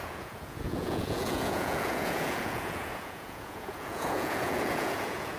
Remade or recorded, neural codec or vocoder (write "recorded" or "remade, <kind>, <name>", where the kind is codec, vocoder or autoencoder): remade, vocoder, Vocos